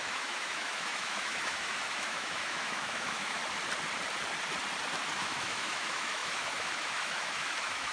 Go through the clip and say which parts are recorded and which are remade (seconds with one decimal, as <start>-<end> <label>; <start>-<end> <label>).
0.0-3.4 remade; 3.4-5.1 recorded; 5.1-7.9 remade